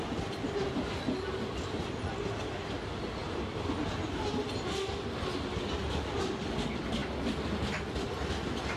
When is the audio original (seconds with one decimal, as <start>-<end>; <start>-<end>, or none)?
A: 0.0-8.8